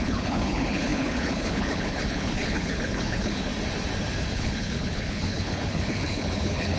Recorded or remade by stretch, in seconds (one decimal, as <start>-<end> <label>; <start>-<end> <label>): 0.0-3.5 remade; 3.5-4.3 recorded; 4.3-6.8 remade

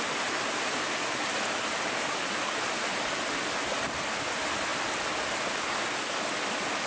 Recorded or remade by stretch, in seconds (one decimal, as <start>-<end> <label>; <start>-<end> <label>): 0.0-6.9 recorded

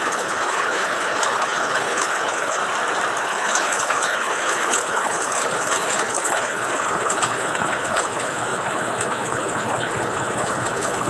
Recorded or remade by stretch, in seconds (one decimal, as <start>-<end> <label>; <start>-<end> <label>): 0.0-2.6 remade; 2.6-3.2 recorded; 3.2-11.1 remade

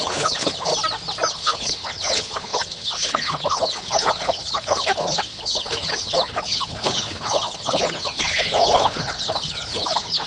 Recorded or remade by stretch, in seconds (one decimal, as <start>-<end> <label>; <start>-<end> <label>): 0.0-0.7 remade; 0.7-1.3 recorded; 1.3-10.3 remade

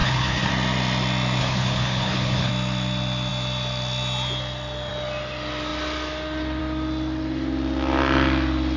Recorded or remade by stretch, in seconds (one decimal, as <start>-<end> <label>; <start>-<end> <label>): 0.0-0.5 remade; 0.5-1.4 recorded; 1.4-2.5 remade; 2.5-8.8 recorded

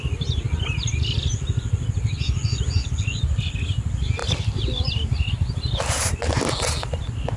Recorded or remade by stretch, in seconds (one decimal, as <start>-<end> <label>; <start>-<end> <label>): 0.0-7.4 recorded

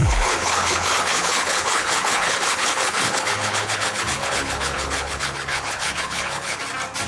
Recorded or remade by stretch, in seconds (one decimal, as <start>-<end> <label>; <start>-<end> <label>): 0.0-6.6 remade; 6.6-7.1 recorded